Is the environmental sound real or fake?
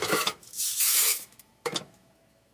fake